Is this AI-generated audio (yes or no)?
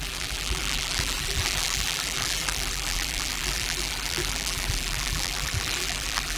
yes